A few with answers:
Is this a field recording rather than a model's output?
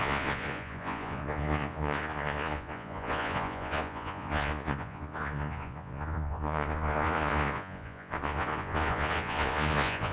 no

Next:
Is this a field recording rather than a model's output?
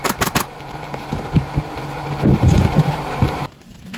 no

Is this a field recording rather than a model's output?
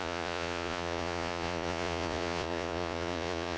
no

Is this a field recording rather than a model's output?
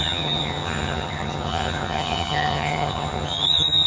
no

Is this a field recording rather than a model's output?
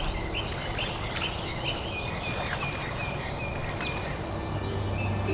yes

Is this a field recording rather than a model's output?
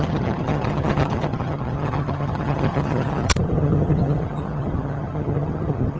no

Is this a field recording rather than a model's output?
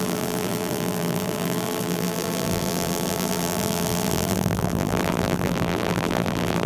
no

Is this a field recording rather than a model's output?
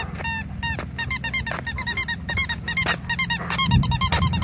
yes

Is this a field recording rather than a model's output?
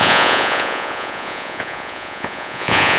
no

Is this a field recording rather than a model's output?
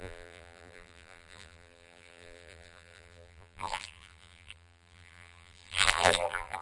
no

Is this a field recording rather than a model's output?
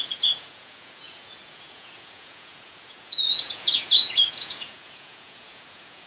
no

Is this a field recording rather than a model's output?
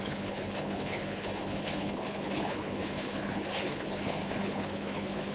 no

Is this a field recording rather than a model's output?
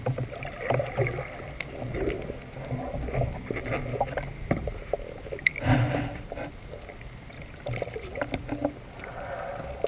yes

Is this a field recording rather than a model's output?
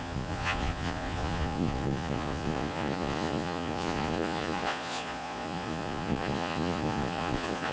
no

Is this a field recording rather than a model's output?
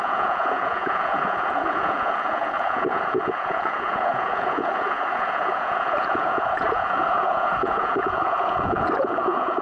no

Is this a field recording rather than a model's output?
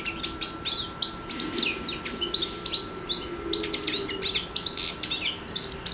yes